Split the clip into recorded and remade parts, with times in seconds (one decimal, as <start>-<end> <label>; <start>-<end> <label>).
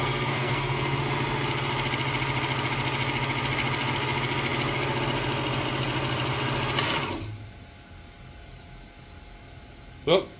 0.0-1.0 remade; 1.0-10.4 recorded